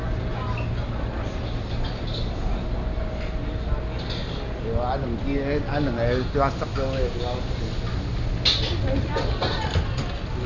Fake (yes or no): no